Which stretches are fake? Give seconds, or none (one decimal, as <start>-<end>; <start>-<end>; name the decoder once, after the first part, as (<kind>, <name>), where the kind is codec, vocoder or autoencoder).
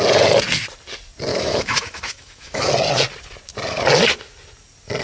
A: 1.3-2.7 (autoencoder, DAC-VAE)